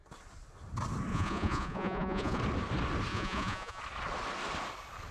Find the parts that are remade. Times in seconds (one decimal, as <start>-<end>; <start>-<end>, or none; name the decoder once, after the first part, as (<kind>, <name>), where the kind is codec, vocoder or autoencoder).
1.1-2.4 (vocoder, Vocos); 3.1-3.8